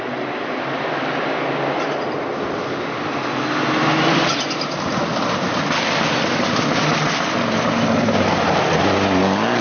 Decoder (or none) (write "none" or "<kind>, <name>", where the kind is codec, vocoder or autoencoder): none